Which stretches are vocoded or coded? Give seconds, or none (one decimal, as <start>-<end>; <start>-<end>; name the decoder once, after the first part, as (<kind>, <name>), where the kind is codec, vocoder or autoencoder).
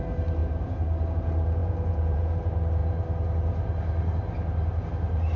1.6-2.3 (vocoder, Vocos)